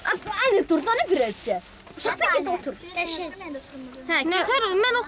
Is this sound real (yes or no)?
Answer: yes